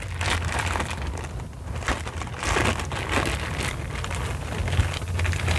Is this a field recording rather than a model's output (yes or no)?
yes